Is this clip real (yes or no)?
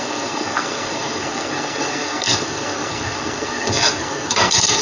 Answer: no